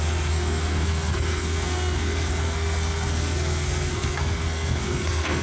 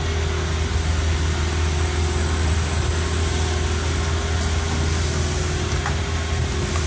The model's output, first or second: first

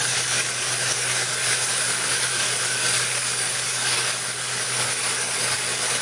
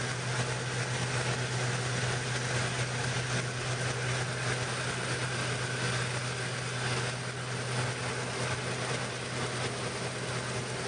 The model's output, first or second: first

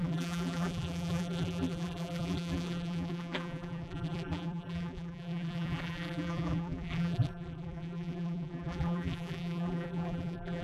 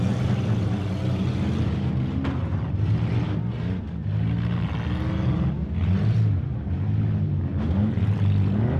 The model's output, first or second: first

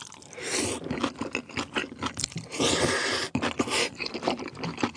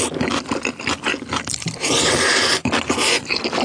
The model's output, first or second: first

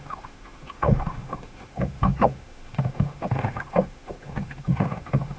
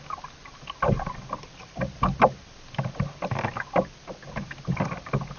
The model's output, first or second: first